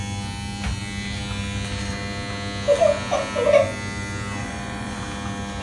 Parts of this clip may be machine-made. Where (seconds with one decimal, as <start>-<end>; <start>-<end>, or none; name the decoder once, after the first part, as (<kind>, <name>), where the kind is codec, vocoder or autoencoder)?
4.4-5.0 (vocoder, Vocos)